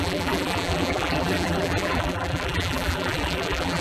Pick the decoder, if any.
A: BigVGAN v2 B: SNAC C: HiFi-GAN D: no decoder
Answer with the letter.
A